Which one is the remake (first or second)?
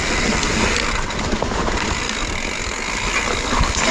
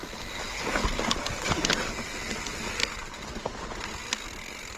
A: first